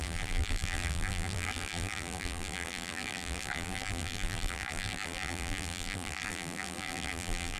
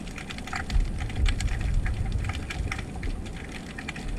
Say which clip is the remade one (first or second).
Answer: first